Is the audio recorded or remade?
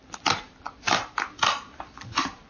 recorded